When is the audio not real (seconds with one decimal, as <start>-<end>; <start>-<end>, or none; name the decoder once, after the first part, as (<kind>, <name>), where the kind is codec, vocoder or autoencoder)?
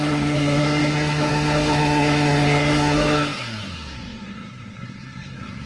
0.0-5.7 (codec, SNAC)